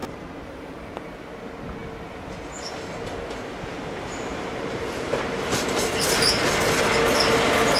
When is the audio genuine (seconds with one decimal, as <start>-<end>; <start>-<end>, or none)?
1.0-4.3; 6.5-7.8